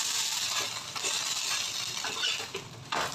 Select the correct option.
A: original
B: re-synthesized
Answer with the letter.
A